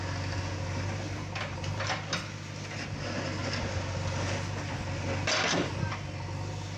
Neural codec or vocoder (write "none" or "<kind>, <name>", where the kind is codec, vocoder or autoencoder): none